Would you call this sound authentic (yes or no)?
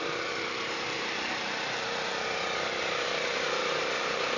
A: no